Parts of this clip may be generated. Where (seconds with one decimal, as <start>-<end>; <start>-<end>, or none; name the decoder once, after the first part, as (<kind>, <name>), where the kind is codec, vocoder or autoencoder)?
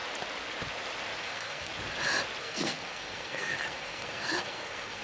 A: 1.2-1.7 (codec, SNAC); 2.4-5.0